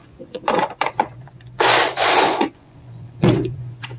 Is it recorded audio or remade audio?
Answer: remade